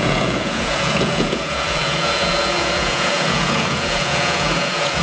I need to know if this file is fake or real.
fake